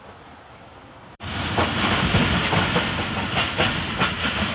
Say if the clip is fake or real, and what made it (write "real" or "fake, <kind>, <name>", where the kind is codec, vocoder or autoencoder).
real